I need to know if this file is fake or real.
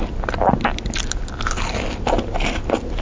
real